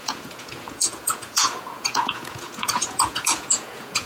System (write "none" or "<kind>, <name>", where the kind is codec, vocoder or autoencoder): vocoder, Vocos